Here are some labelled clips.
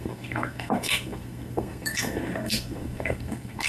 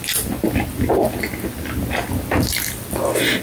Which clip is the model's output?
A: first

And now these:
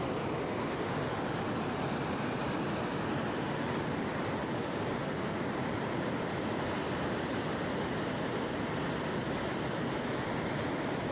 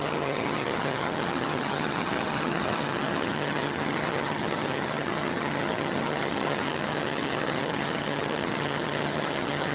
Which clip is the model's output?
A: second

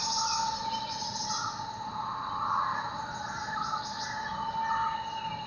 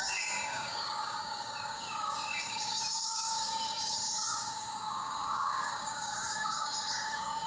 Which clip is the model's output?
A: second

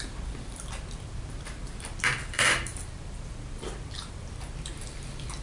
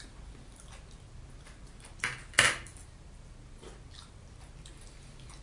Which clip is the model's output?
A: first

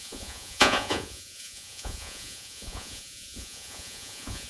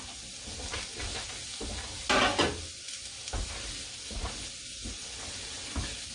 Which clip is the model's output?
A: first